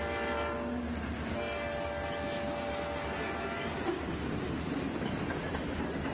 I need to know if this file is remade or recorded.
recorded